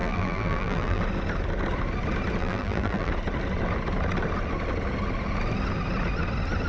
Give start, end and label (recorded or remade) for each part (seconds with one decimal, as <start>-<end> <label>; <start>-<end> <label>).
0.0-1.0 remade; 1.0-2.4 recorded; 2.4-3.1 remade; 3.1-6.7 recorded